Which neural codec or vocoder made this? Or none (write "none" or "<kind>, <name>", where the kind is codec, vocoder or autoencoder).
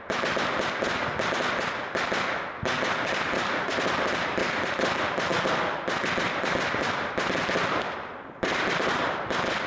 none